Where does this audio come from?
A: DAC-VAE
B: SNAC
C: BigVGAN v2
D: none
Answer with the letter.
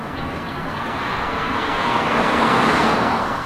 B